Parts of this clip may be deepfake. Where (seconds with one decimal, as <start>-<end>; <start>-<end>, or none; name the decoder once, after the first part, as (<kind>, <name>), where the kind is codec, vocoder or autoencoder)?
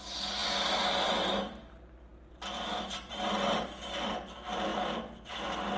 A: none